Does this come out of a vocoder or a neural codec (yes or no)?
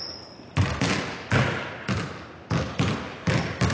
no